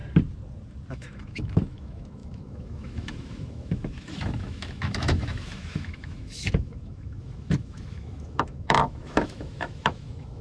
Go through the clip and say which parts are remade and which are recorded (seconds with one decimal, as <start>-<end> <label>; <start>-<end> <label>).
0.0-0.9 recorded; 0.9-10.4 remade